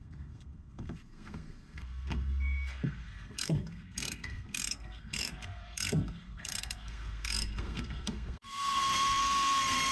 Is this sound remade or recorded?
remade